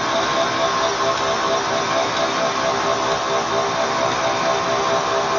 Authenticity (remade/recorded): recorded